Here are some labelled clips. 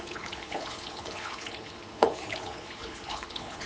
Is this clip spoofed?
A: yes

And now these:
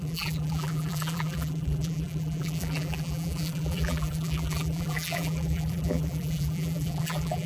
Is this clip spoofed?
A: yes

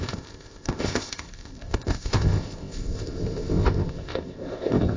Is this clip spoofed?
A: yes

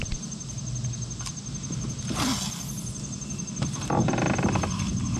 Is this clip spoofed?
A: no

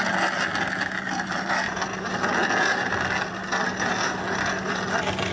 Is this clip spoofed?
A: no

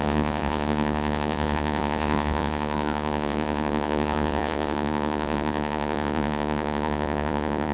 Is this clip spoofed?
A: yes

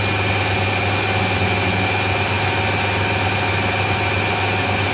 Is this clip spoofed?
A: no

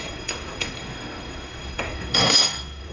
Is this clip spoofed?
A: yes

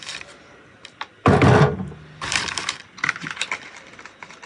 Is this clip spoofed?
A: no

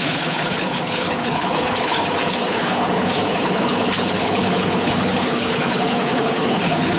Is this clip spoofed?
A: yes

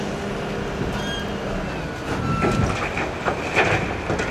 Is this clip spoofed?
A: no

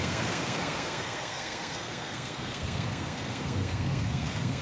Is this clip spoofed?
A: yes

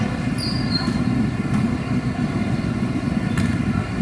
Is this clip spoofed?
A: no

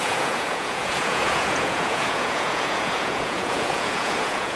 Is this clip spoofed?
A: yes